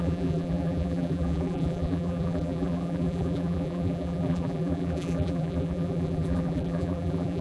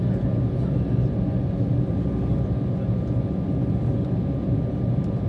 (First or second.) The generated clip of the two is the first